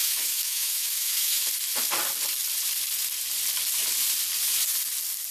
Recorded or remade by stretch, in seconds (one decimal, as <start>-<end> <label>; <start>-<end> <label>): 0.0-1.4 remade; 1.4-5.3 recorded